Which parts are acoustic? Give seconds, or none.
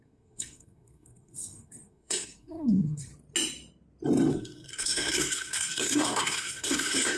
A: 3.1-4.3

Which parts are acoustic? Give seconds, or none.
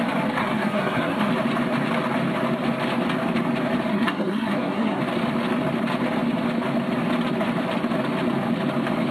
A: 0.0-0.4; 1.3-3.9; 5.0-9.1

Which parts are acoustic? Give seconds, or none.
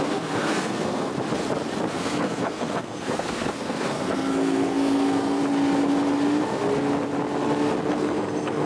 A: 1.1-1.9; 5.4-7.9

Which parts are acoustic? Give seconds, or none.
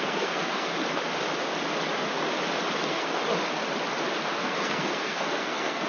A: 0.7-2.8; 3.2-4.4